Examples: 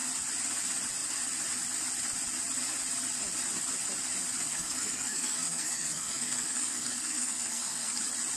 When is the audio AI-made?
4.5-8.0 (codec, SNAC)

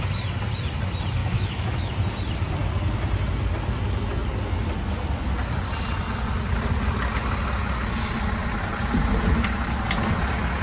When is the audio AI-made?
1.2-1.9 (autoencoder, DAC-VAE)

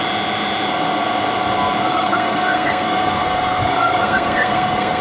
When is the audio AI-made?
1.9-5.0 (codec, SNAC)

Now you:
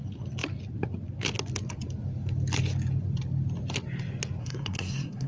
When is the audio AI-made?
4.4-5.3 (codec, SNAC)

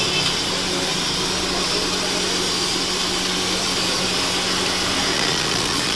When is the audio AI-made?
5.1-6.0 (vocoder, Vocos)

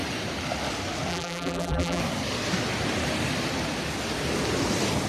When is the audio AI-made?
1.1-2.0 (vocoder, BigVGAN v2)

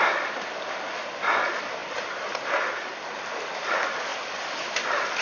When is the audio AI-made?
none

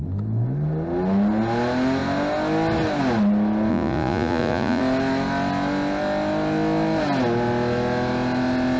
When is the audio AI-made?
3.7-4.8 (vocoder, Vocos)